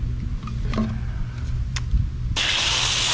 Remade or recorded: recorded